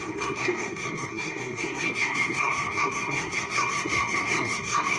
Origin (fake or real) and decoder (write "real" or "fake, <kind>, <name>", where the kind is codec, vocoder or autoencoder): fake, codec, SNAC